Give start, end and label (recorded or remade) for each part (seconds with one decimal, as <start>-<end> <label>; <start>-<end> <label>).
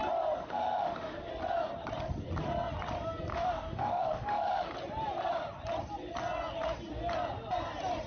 0.0-0.4 recorded; 0.4-1.3 remade; 1.3-3.3 recorded; 3.3-4.7 remade; 4.7-8.1 recorded